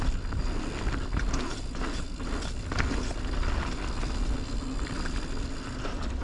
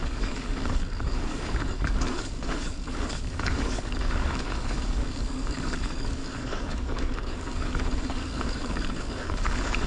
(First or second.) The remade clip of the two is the second